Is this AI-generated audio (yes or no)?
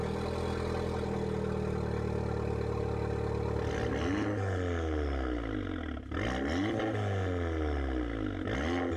no